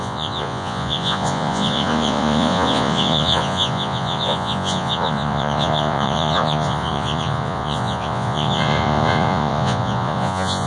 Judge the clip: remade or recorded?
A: remade